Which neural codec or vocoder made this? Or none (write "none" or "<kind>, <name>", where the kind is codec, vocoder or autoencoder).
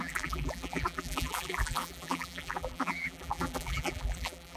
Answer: vocoder, BigVGAN v2